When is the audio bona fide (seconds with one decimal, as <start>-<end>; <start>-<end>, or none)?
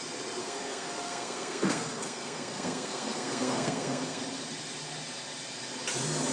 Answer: 0.0-0.4; 4.2-6.3